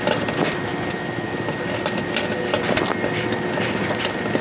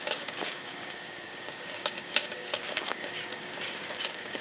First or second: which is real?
first